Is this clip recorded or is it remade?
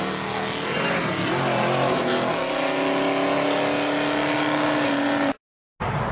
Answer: recorded